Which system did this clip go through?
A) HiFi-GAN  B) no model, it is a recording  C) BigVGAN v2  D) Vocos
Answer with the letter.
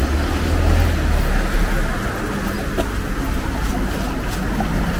B